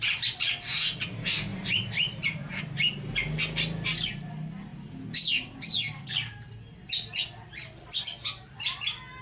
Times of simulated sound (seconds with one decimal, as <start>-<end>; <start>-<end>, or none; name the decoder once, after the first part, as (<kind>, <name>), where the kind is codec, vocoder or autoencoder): 1.5-2.6 (vocoder, BigVGAN v2)